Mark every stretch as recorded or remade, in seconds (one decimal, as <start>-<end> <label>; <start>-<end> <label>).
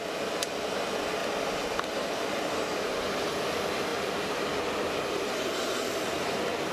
0.0-6.7 recorded